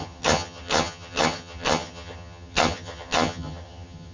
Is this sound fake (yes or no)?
yes